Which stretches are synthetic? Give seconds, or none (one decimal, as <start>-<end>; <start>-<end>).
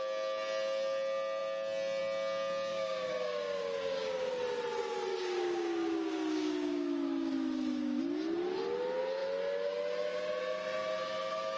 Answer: 2.7-4.3; 5.1-8.0